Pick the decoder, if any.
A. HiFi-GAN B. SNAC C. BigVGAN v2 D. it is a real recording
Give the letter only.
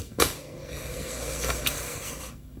B